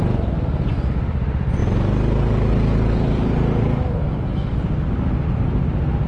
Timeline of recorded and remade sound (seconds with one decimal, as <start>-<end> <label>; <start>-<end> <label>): 0.0-6.1 recorded